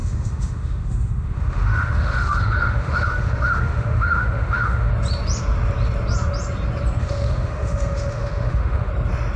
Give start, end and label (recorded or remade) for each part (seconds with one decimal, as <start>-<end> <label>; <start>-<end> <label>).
0.0-4.9 remade; 4.9-7.0 recorded; 7.0-8.9 remade; 8.9-9.4 recorded